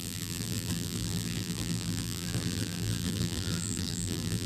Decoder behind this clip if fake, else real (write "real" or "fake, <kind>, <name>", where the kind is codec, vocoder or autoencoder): fake, vocoder, BigVGAN v2